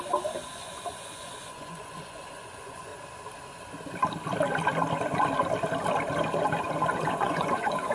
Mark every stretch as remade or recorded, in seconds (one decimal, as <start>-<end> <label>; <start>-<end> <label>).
0.0-2.9 remade; 2.9-7.1 recorded; 7.1-7.9 remade